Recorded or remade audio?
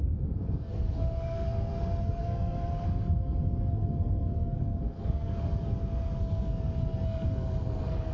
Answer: remade